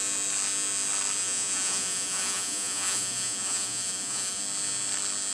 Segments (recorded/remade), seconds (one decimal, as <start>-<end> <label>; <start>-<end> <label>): 0.0-1.2 recorded; 1.2-4.4 remade; 4.4-5.3 recorded